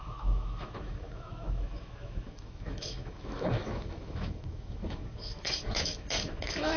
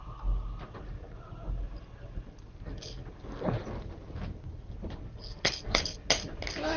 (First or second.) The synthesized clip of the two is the first